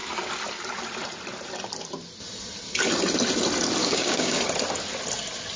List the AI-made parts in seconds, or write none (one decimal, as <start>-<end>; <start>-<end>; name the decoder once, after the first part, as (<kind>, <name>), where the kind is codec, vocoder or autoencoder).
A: 3.8-4.4 (codec, DAC)